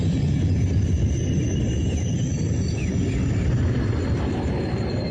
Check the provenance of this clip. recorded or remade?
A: recorded